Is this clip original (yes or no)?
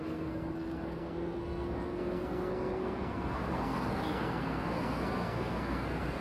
no